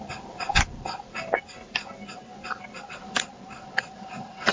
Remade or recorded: recorded